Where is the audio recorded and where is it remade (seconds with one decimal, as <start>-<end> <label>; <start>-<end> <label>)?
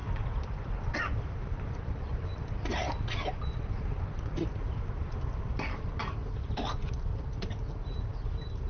0.0-8.7 recorded